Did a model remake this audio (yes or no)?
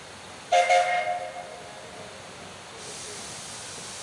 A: no